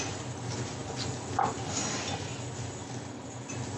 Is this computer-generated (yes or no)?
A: no